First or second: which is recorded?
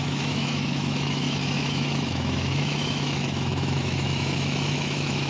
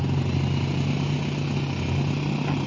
second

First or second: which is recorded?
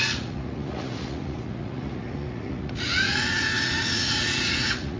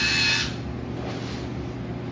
second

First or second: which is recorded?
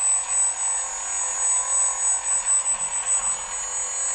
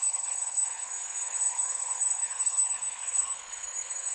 first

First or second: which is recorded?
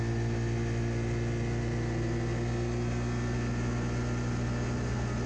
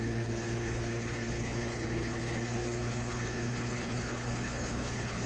first